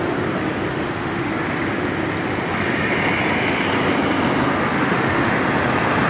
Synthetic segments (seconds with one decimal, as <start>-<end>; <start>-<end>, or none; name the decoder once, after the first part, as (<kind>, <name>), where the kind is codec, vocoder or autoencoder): 0.7-1.3 (autoencoder, DAC-VAE); 4.7-5.3

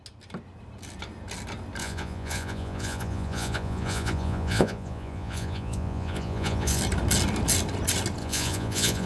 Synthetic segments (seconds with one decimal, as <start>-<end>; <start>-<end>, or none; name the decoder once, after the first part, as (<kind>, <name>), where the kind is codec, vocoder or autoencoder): 1.8-6.8 (vocoder, Vocos); 8.2-9.1

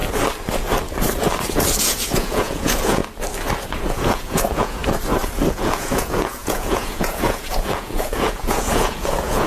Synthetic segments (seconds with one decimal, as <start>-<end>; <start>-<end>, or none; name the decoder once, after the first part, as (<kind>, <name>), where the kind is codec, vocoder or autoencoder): 1.8-3.0 (vocoder, Vocos); 3.9-4.8; 5.5-9.5

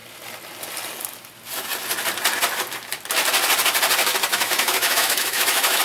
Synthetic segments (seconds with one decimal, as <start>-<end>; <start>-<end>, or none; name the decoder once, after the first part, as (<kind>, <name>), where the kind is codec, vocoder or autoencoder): 4.3-5.8 (autoencoder, DAC-VAE)

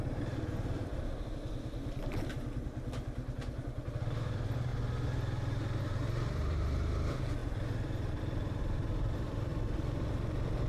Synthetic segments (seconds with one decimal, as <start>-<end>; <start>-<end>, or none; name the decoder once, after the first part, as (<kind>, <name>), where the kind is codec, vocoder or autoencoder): 0.0-0.9 (vocoder, BigVGAN v2); 3.6-4.7; 5.8-9.5

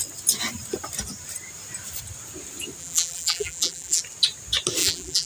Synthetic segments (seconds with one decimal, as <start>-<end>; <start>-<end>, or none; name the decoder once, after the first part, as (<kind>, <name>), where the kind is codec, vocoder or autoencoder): 2.8-4.0 (vocoder, BigVGAN v2); 4.8-5.3